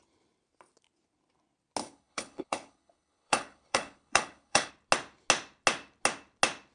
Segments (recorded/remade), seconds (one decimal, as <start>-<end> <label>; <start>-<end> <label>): 0.0-1.8 recorded; 1.8-4.7 remade; 4.7-6.7 recorded